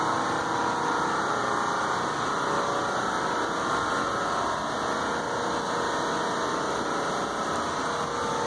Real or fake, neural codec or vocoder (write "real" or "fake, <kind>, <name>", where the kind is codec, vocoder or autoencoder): real